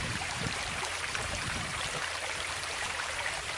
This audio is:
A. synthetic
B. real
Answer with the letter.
A